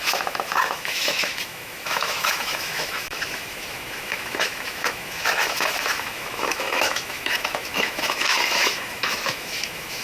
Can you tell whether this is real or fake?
fake